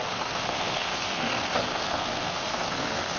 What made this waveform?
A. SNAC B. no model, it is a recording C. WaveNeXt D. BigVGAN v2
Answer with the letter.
A